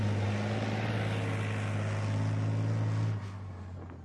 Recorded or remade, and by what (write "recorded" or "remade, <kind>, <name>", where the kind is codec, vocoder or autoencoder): recorded